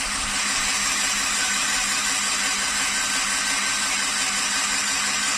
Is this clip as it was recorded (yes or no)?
yes